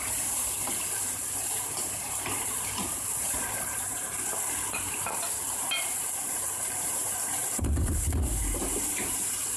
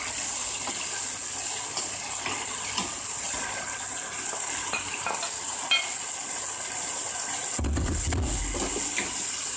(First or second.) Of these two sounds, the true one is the second